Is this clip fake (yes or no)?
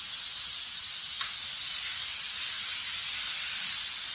no